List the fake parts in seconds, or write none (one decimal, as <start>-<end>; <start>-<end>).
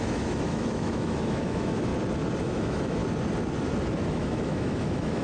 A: 0.0-1.9; 2.4-3.0; 4.1-5.2